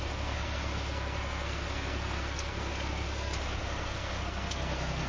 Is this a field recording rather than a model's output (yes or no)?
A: no